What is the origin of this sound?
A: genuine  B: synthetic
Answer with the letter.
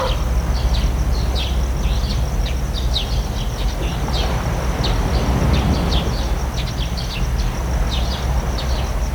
A